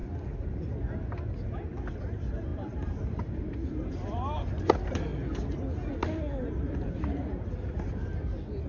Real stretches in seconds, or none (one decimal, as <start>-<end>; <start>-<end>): 0.0-2.0; 5.1-6.4